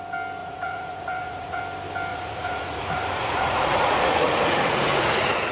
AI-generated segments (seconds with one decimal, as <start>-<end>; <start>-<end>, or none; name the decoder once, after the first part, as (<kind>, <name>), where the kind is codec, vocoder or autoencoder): 0.4-1.6 (vocoder, Vocos); 2.1-5.5